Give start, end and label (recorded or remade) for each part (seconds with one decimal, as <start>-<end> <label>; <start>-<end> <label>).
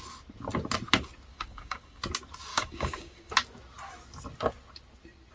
0.0-1.3 recorded; 1.3-2.0 remade; 2.0-2.5 recorded; 2.5-3.3 remade; 3.3-5.3 recorded